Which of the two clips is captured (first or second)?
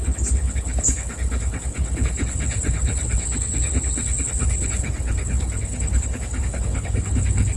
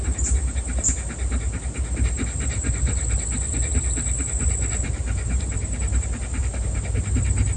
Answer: second